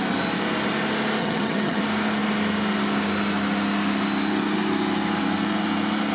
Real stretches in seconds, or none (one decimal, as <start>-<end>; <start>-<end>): 0.0-1.2; 1.8-6.1